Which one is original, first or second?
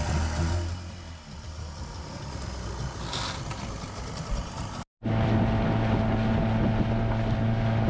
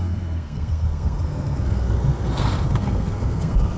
first